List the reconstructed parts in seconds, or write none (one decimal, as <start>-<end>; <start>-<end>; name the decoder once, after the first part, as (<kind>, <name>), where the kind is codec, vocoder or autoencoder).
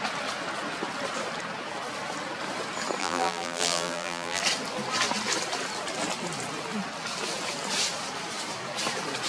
3.0-4.4 (vocoder, BigVGAN v2)